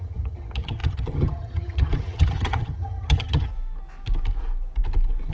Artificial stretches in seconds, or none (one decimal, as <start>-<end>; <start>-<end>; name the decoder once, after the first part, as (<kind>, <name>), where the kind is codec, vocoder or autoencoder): 0.0-3.5 (vocoder, HiFi-GAN)